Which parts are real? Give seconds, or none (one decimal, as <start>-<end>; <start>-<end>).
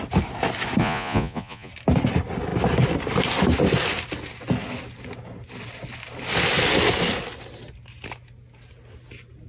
0.0-0.8; 1.7-9.5